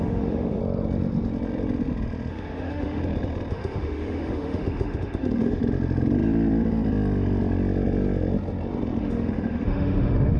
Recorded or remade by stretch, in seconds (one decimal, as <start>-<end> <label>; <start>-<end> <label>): 0.0-0.6 remade; 0.6-2.3 recorded; 2.3-3.0 remade; 3.0-3.5 recorded; 3.5-5.6 remade; 5.6-9.0 recorded; 9.0-10.4 remade